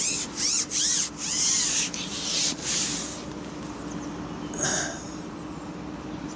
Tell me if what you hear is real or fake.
real